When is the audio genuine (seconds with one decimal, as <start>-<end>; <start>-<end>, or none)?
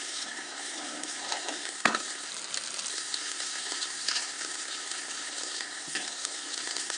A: 2.3-2.9